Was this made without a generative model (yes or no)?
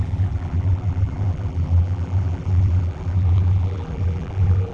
no